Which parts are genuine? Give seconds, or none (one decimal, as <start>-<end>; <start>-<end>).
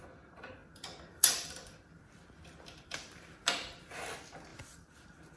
0.0-0.6; 3.8-4.5